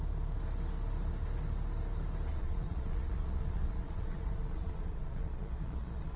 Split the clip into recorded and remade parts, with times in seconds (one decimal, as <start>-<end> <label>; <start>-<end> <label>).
0.0-2.3 recorded; 2.3-6.2 remade